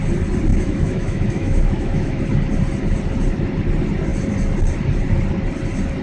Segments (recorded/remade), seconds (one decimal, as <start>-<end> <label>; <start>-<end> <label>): 0.0-0.5 recorded; 0.5-2.2 remade; 2.2-6.0 recorded